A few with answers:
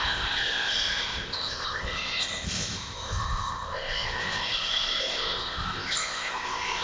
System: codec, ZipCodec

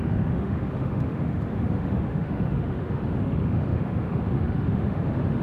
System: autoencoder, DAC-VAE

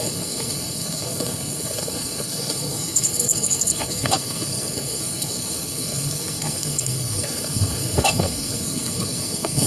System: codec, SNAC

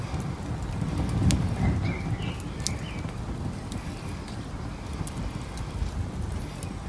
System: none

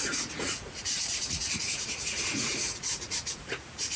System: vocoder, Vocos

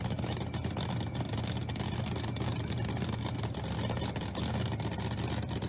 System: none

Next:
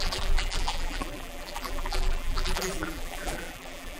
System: vocoder, BigVGAN v2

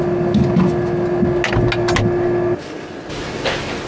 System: none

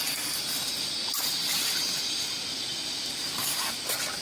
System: none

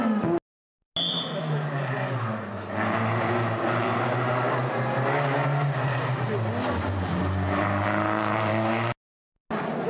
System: none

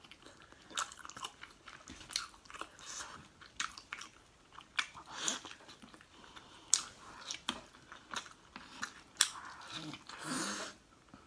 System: none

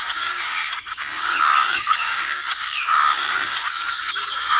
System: codec, DAC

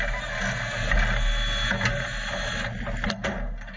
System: none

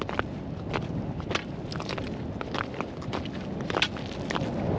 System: none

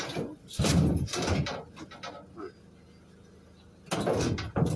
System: none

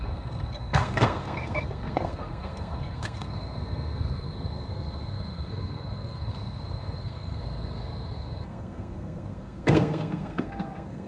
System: codec, SNAC